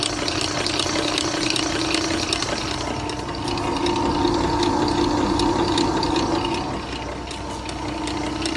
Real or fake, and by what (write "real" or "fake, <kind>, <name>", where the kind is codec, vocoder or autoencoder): real